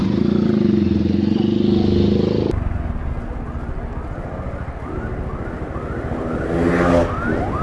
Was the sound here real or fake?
real